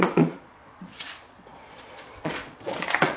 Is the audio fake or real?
fake